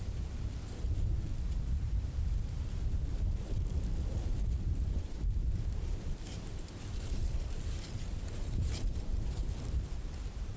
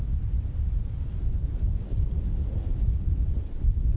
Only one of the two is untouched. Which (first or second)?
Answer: second